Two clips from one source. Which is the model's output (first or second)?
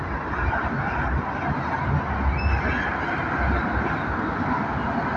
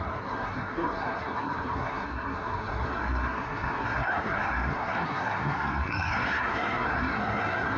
second